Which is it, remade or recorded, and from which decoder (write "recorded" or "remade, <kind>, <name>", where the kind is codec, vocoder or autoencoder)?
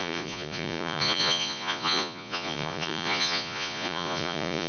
remade, vocoder, Vocos